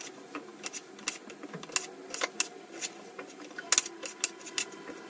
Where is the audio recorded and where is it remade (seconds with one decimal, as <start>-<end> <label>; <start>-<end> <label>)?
0.0-5.1 recorded